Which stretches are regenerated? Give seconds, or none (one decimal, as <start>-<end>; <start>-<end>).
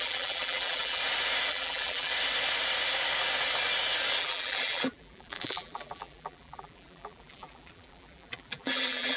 0.0-1.0; 1.5-2.1; 4.2-9.2